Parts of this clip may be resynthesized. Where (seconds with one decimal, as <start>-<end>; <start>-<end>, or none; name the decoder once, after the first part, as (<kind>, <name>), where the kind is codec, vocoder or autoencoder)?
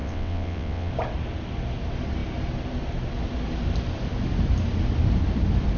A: 0.0-0.9 (vocoder, WaveNeXt)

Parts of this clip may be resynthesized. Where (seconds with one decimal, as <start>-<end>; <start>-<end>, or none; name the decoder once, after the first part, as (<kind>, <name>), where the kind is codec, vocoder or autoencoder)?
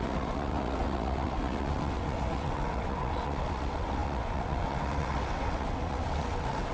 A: 0.0-6.7 (vocoder, WaveNeXt)